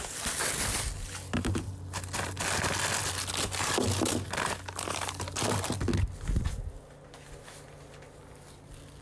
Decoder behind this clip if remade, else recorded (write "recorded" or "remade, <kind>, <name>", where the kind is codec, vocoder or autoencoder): recorded